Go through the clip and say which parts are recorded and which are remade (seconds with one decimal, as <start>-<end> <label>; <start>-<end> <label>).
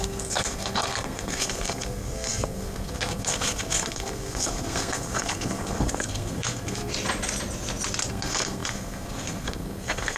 0.0-6.9 remade; 6.9-8.1 recorded; 8.1-10.2 remade